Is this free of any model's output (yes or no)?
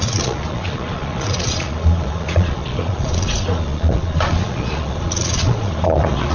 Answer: no